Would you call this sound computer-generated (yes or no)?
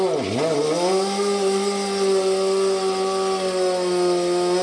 no